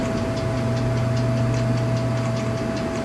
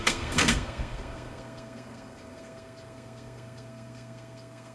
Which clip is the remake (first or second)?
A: second